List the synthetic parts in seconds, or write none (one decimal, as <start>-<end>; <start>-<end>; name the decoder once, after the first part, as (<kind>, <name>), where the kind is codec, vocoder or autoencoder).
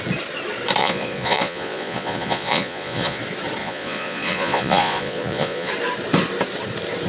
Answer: 0.8-3.2 (vocoder, Vocos); 3.6-5.7